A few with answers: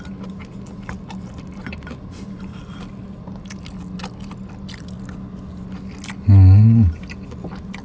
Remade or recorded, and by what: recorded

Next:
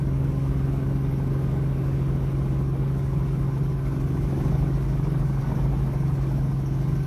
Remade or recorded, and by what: remade, codec, DAC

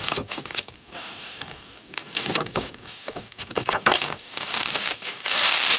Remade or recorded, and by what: remade, codec, DAC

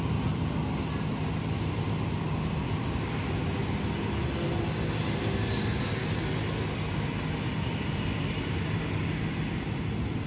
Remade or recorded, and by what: recorded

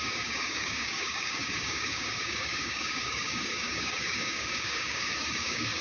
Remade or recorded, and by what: remade, codec, DAC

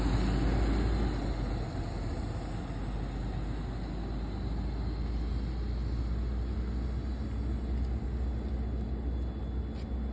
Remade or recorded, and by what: recorded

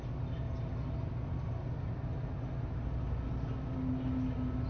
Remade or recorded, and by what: recorded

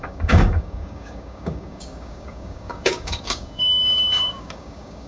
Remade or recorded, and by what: remade, codec, DAC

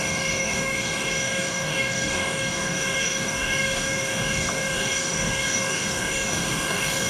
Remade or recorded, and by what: remade, codec, DAC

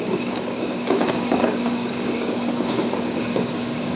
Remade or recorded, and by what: remade, codec, DAC